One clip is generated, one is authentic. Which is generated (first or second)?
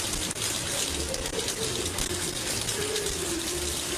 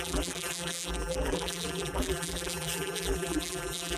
second